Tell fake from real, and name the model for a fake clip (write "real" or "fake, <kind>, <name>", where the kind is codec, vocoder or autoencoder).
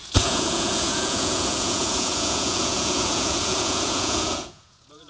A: fake, vocoder, Vocos